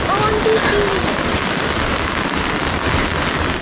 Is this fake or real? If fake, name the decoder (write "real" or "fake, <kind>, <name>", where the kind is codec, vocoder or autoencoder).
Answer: real